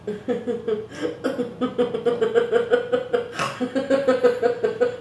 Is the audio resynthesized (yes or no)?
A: no